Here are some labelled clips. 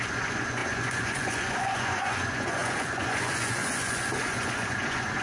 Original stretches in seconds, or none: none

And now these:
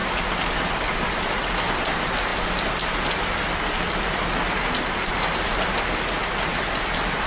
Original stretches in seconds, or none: 0.0-7.3

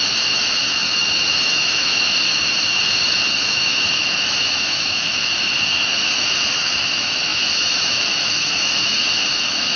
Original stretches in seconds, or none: none

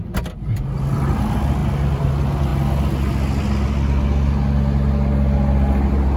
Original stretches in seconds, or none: 0.0-1.6; 2.1-6.2